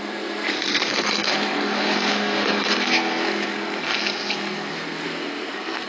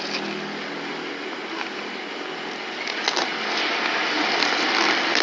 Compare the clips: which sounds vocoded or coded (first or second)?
first